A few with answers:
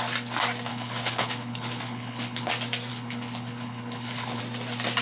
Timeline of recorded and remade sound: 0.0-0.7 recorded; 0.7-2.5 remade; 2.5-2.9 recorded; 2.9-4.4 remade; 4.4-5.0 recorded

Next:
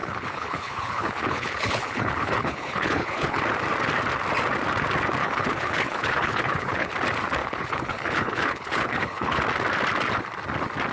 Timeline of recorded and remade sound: 0.0-3.4 remade; 3.4-5.2 recorded; 5.2-6.9 remade; 6.9-7.4 recorded; 7.4-9.4 remade; 9.4-10.9 recorded

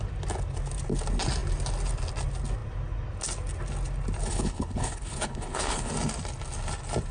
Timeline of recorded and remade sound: 0.0-4.3 recorded; 4.3-5.9 remade; 5.9-7.1 recorded

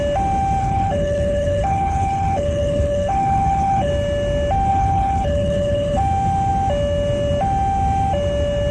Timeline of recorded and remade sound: 0.0-0.6 recorded; 0.6-3.9 remade; 3.9-4.7 recorded; 4.7-6.0 remade; 6.0-8.7 recorded